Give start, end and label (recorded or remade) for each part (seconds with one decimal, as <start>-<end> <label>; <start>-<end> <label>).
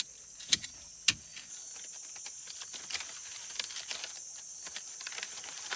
0.0-0.7 remade; 0.7-4.1 recorded; 4.1-5.8 remade